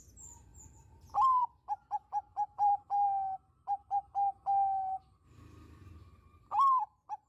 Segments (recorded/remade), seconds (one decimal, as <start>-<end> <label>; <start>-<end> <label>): 0.0-0.5 recorded; 0.5-1.5 remade; 1.5-2.3 recorded; 2.3-2.9 remade; 2.9-7.3 recorded